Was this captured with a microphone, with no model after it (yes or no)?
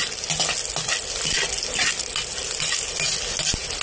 yes